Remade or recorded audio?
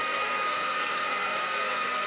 remade